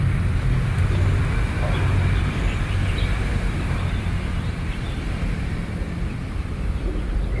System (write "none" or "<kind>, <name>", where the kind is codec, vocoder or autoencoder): vocoder, BigVGAN v2